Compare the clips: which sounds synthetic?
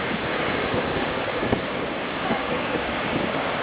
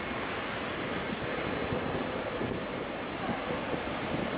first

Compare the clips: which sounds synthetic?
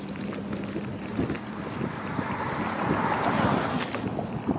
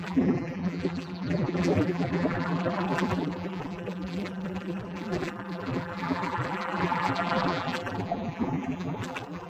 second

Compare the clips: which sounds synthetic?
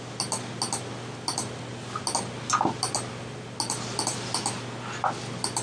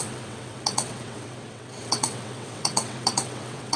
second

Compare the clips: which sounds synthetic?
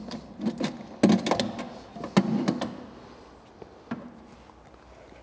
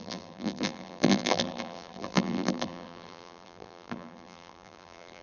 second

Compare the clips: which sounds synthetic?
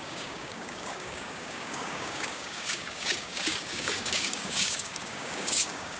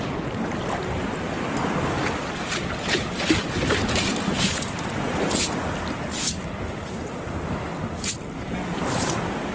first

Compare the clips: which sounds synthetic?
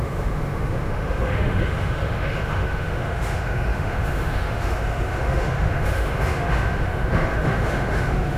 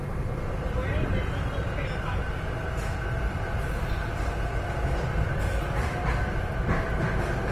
first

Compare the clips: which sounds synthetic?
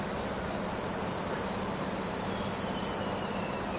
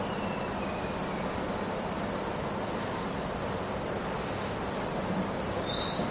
first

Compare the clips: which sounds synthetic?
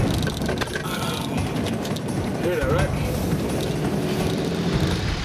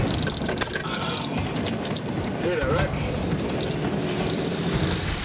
second